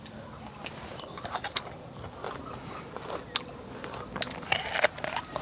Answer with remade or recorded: recorded